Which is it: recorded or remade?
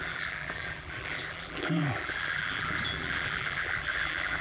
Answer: remade